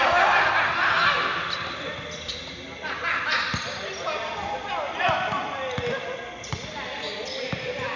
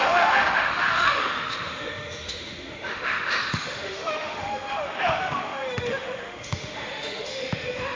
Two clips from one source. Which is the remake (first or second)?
second